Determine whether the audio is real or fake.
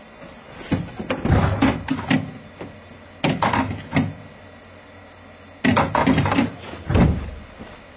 real